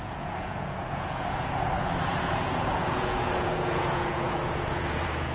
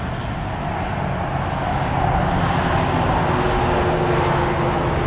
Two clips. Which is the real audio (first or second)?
second